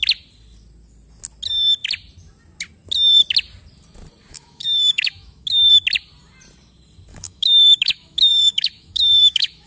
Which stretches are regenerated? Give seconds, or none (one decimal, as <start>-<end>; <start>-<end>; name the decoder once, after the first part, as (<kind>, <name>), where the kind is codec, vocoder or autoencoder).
4.3-5.7 (autoencoder, DAC-VAE); 7.1-9.7